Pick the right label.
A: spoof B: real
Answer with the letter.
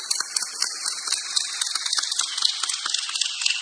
B